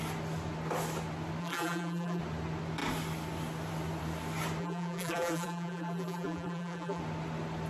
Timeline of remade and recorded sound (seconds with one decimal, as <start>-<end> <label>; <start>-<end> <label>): 0.0-1.4 recorded; 1.4-2.2 remade; 2.2-4.6 recorded; 4.6-7.0 remade; 7.0-7.7 recorded

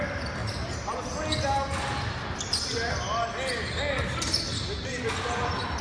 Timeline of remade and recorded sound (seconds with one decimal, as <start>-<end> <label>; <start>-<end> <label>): 0.0-5.8 recorded

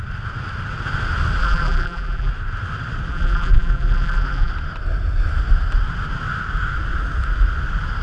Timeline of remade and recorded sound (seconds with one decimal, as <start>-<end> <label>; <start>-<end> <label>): 0.0-1.4 recorded; 1.4-2.3 remade; 2.3-3.1 recorded; 3.1-4.5 remade; 4.5-8.0 recorded

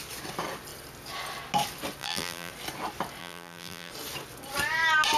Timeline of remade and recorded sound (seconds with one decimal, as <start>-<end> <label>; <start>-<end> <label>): 0.0-2.0 recorded; 2.0-2.5 remade; 2.5-3.2 recorded; 3.2-3.9 remade; 3.9-5.2 recorded

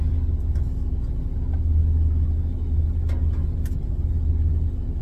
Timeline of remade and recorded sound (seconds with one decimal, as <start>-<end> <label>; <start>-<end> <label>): 0.0-5.0 recorded

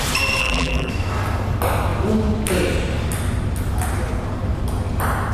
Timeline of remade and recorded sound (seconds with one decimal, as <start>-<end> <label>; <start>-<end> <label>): 0.0-0.4 recorded; 0.4-0.9 remade; 0.9-5.3 recorded

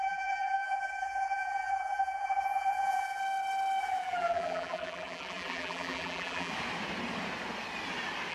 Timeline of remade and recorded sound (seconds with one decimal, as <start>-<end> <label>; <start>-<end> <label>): 0.0-3.2 remade; 3.2-3.8 recorded; 3.8-6.5 remade; 6.5-8.3 recorded

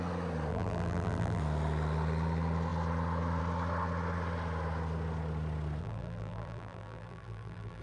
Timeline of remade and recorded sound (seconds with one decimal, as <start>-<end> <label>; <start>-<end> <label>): 0.0-0.5 recorded; 0.5-1.4 remade; 1.4-5.8 recorded; 5.8-7.8 remade